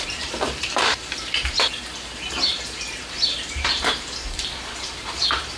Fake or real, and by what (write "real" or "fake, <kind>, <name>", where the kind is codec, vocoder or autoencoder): fake, vocoder, BigVGAN v2